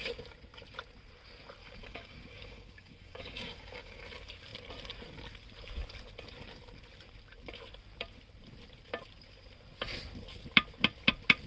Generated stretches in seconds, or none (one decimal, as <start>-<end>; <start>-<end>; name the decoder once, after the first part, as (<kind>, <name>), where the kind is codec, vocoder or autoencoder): 1.6-4.0 (codec, DAC)